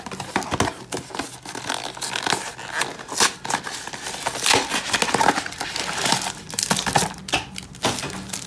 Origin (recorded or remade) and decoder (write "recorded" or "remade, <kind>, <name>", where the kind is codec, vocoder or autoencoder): recorded